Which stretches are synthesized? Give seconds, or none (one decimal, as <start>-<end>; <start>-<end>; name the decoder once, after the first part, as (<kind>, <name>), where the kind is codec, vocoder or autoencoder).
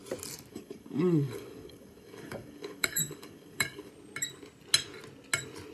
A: 0.5-3.9 (codec, DAC)